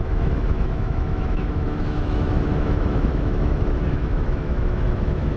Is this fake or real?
fake